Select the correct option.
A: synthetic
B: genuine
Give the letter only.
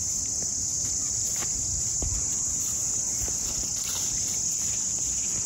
A